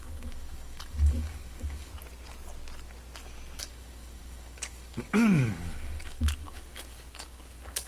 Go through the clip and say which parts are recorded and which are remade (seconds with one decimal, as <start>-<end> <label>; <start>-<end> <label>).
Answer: 0.0-1.9 remade; 1.9-3.6 recorded; 3.6-7.9 remade